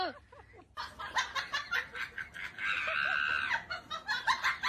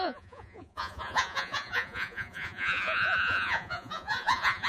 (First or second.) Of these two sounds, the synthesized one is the second